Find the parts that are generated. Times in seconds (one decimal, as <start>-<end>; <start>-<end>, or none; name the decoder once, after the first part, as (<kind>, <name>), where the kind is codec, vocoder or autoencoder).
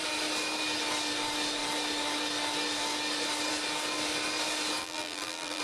4.8-5.6 (vocoder, BigVGAN v2)